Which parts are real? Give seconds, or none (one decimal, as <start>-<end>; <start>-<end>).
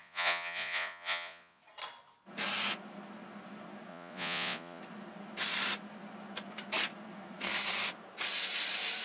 1.6-3.9; 4.8-9.0